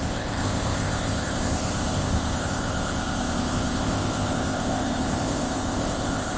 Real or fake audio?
fake